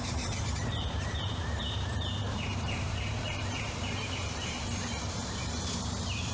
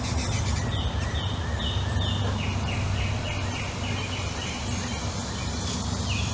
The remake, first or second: first